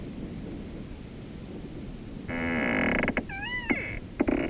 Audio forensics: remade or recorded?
recorded